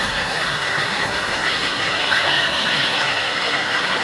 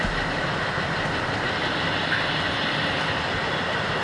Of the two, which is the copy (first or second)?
first